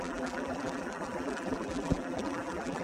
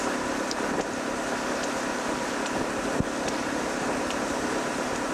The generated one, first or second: first